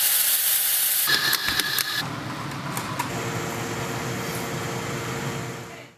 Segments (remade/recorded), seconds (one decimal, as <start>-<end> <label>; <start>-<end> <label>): 0.0-6.0 recorded